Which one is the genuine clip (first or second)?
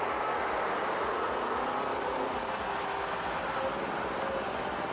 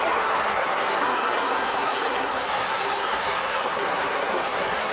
first